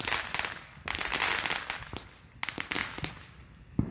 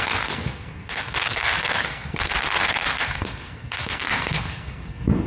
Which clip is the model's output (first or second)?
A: second